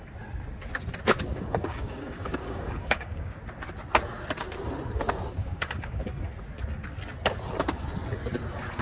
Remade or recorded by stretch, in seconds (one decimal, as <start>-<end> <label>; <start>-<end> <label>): 0.0-1.3 recorded; 1.3-3.4 remade; 3.4-5.4 recorded; 5.4-6.0 remade; 6.0-8.8 recorded